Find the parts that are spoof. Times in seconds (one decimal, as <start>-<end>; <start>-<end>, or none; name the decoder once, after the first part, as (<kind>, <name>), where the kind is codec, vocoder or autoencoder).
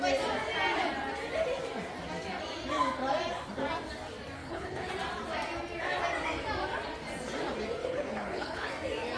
4.4-4.9 (codec, HILCodec); 7.8-8.7